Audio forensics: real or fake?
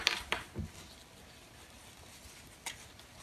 real